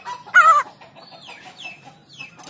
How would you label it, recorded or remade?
recorded